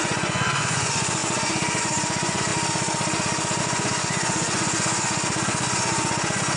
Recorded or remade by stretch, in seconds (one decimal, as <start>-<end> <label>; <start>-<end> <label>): 0.0-2.5 remade; 2.5-3.6 recorded; 3.6-6.6 remade